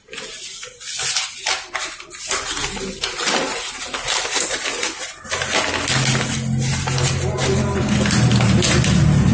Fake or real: real